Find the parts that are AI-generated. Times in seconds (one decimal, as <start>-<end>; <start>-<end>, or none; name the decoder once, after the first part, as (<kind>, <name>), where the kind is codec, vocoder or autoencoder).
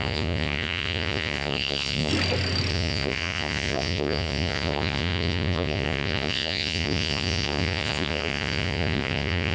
0.0-2.1 (vocoder, Vocos); 2.7-9.5